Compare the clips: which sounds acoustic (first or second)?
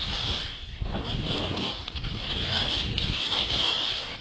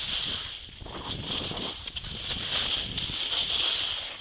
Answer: second